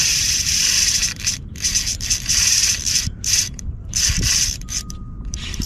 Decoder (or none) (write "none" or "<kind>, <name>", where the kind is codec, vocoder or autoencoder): vocoder, BigVGAN v2